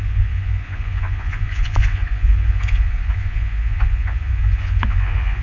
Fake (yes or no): yes